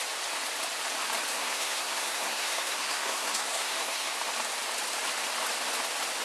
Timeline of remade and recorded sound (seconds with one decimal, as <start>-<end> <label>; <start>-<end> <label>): 0.0-1.3 recorded; 1.3-4.1 remade; 4.1-6.2 recorded